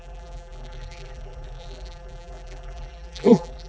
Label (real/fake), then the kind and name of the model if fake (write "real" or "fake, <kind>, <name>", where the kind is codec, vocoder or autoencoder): fake, vocoder, BigVGAN v2